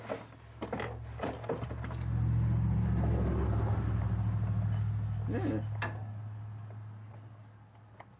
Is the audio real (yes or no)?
yes